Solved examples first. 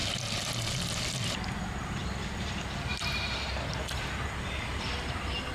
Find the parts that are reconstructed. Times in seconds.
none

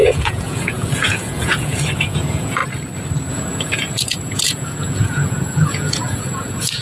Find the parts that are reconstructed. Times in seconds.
0.0-2.6 (vocoder, Vocos); 3.3-6.8

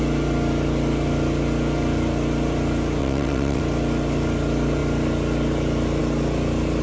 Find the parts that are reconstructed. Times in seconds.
3.0-3.6 (vocoder, WaveNeXt)

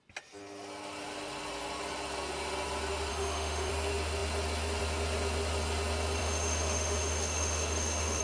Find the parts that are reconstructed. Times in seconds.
3.1-3.7 (autoencoder, DAC-VAE); 6.2-8.2

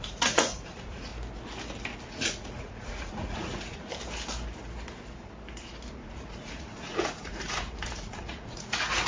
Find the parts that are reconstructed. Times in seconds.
0.0-1.1 (vocoder, Vocos); 2.1-3.9; 5.9-9.1

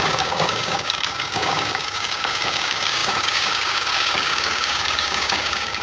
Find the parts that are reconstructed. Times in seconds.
0.0-5.8 (codec, DAC)

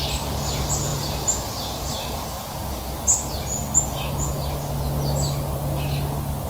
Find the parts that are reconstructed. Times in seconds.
none

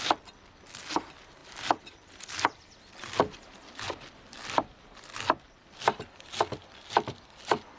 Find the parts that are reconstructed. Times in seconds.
none